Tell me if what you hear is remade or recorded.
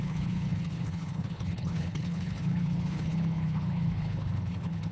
remade